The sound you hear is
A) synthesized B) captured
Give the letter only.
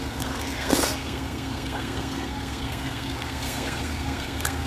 A